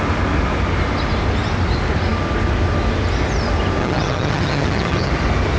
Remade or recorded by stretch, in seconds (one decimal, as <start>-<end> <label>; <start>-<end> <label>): 0.0-3.8 recorded; 3.8-5.1 remade; 5.1-5.6 recorded